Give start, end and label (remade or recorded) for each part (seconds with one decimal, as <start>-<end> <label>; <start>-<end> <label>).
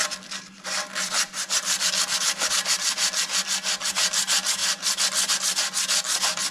0.0-6.5 recorded